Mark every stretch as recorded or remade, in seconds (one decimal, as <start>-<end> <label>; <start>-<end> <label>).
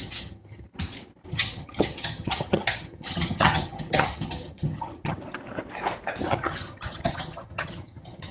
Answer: 0.0-0.7 remade; 0.7-1.3 recorded; 1.3-5.2 remade; 5.2-6.2 recorded; 6.2-8.3 remade